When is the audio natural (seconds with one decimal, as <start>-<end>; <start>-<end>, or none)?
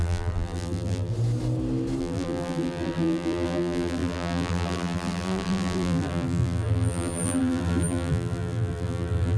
1.1-2.0